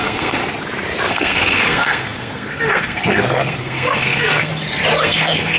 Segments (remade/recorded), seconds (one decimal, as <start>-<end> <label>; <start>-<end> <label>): 0.0-0.4 remade; 0.4-1.1 recorded; 1.1-4.5 remade; 4.5-5.0 recorded; 5.0-5.6 remade